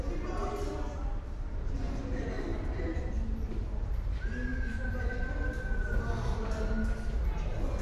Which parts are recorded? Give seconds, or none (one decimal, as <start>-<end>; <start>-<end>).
0.0-2.5; 3.1-4.5; 5.2-7.8